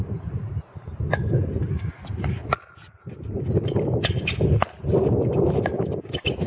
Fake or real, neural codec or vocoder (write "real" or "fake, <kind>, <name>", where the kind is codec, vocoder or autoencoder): real